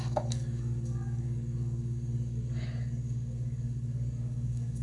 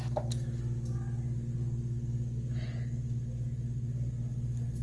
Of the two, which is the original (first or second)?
second